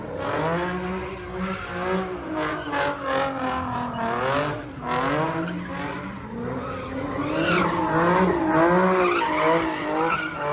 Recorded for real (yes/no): yes